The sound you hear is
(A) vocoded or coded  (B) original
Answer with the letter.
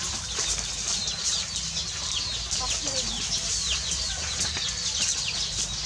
B